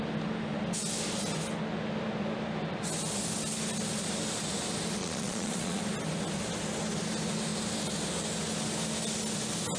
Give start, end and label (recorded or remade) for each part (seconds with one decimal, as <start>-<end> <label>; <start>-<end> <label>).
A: 0.0-5.0 recorded; 5.0-5.8 remade; 5.8-9.8 recorded